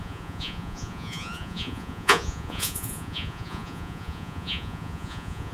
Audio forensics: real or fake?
fake